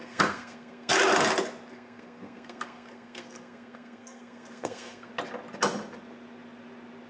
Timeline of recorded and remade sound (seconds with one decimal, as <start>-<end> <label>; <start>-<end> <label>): 0.0-0.9 remade; 0.9-1.7 recorded; 1.7-5.1 remade; 5.1-7.1 recorded